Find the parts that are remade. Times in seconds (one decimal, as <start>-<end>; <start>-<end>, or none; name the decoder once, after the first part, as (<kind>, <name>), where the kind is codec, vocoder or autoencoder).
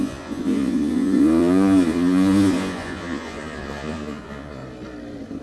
0.0-4.6 (vocoder, Vocos)